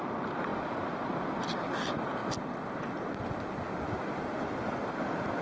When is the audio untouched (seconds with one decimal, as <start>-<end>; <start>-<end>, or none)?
0.0-5.4